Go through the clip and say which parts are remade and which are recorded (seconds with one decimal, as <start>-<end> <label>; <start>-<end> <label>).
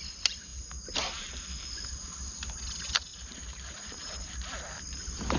0.0-3.1 recorded; 3.1-4.8 remade; 4.8-5.4 recorded